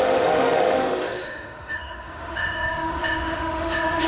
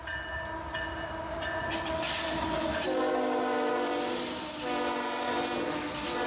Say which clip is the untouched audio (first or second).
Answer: second